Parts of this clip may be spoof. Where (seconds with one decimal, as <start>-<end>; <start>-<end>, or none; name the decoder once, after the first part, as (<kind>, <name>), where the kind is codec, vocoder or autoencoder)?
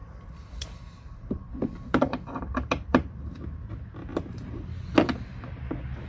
0.0-3.3 (vocoder, BigVGAN v2); 4.1-4.7